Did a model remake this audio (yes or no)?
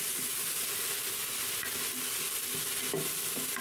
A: no